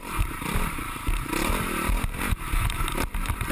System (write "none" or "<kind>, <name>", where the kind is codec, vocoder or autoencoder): vocoder, BigVGAN v2